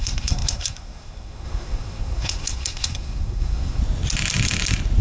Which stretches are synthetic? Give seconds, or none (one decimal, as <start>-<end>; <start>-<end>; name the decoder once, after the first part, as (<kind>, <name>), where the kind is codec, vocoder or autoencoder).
0.0-3.8 (codec, SNAC)